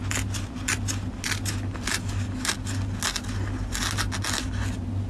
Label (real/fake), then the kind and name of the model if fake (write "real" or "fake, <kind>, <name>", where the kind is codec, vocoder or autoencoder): real